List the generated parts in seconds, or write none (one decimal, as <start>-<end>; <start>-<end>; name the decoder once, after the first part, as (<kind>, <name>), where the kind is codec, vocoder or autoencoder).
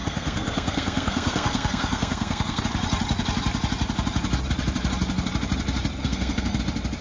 0.0-2.6 (codec, SNAC); 6.0-6.6